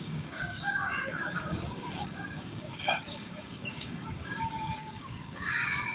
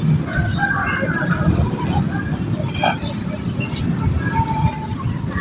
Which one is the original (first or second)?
second